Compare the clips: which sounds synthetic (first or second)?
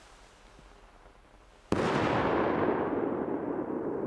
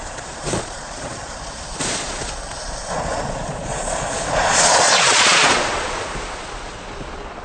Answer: second